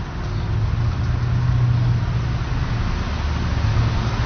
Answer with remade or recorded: recorded